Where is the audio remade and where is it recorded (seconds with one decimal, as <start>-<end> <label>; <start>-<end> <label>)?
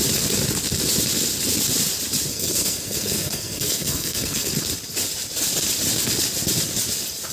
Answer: 0.0-2.3 recorded; 2.3-4.5 remade; 4.5-7.3 recorded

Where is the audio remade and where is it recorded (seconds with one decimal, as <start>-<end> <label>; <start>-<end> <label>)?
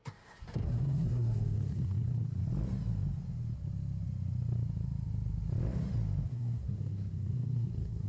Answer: 0.0-2.4 remade; 2.4-6.3 recorded; 6.3-8.1 remade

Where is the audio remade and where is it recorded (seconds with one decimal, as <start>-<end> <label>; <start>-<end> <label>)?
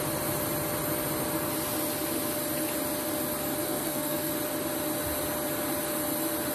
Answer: 0.0-3.6 recorded; 3.6-4.3 remade; 4.3-6.5 recorded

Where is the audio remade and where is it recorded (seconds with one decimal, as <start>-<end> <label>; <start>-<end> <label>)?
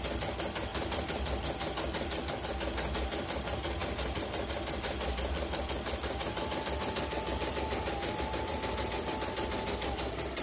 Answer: 0.0-10.4 recorded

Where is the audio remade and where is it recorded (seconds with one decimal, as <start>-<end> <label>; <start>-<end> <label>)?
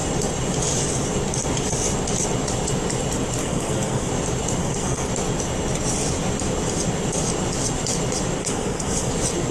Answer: 0.0-3.4 recorded; 3.4-4.1 remade; 4.1-4.6 recorded; 4.6-5.1 remade; 5.1-8.4 recorded; 8.4-9.1 remade; 9.1-9.5 recorded